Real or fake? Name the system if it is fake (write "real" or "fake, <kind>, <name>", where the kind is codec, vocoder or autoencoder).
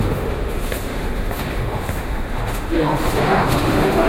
fake, autoencoder, DAC-VAE